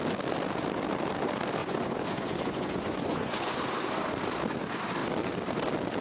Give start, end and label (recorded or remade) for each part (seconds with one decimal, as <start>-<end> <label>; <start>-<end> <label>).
0.0-1.6 recorded; 1.6-3.6 remade; 3.6-6.0 recorded